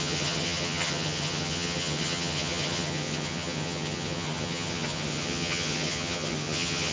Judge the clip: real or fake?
fake